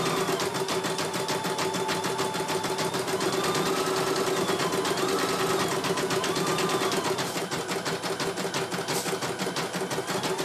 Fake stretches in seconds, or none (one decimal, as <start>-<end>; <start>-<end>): none